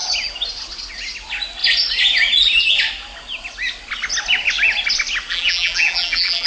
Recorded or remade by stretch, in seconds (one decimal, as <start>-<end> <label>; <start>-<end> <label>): 0.0-5.3 recorded; 5.3-6.5 remade